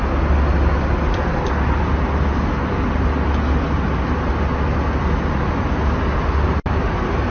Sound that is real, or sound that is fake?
real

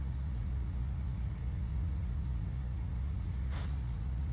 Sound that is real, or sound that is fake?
fake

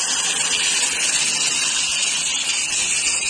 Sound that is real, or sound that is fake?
real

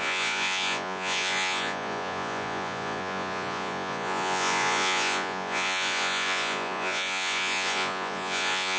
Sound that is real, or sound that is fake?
fake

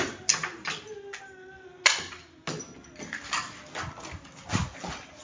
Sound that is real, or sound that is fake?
real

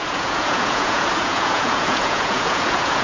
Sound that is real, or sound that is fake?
fake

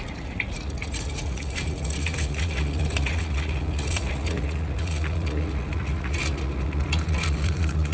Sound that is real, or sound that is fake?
fake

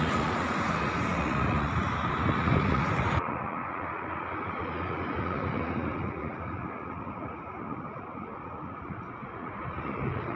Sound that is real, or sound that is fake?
fake